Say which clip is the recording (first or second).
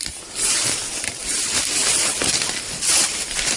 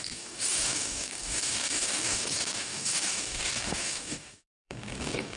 first